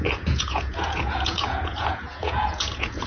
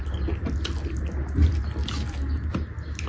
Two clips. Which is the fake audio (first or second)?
first